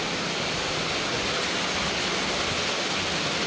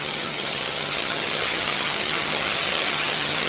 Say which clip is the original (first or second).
first